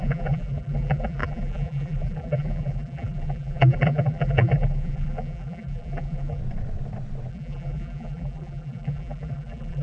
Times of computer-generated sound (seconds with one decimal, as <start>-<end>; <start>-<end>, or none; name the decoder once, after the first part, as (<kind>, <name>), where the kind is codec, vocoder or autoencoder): 0.0-6.4 (vocoder, BigVGAN v2); 7.3-9.8